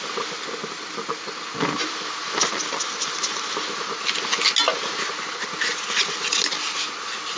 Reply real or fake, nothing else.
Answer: real